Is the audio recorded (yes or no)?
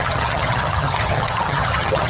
no